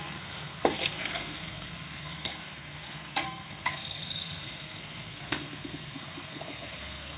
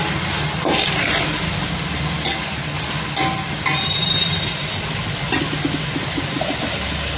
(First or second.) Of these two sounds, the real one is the second